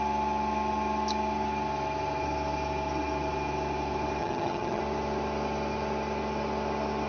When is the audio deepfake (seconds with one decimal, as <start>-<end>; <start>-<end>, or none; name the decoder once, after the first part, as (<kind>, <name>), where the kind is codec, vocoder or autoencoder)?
4.2-4.8 (vocoder, HiFi-GAN)